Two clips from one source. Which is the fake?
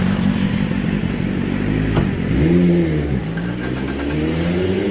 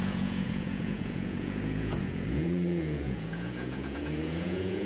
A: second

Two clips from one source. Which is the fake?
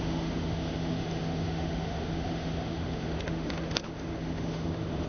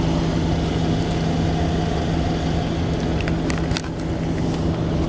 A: first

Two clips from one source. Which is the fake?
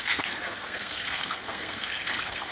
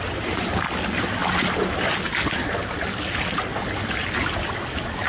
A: first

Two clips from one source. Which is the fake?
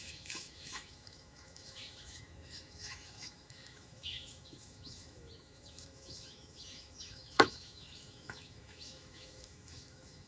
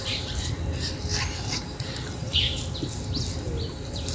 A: first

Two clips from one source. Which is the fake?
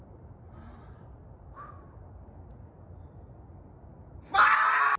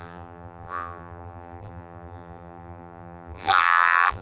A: second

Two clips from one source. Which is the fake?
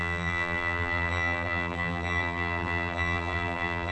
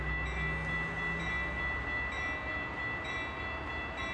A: first